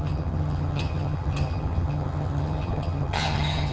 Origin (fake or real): fake